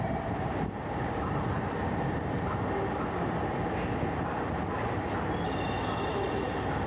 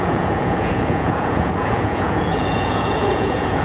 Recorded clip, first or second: first